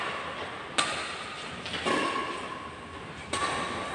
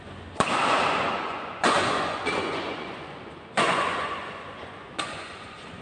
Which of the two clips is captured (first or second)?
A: first